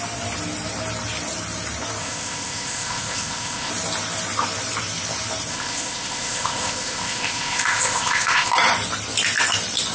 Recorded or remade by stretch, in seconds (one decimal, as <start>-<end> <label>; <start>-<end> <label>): 0.0-2.0 recorded; 2.0-3.7 remade; 3.7-5.5 recorded; 5.5-8.5 remade; 8.5-9.9 recorded